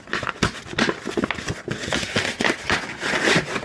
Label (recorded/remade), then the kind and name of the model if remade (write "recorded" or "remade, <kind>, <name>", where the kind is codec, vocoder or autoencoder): recorded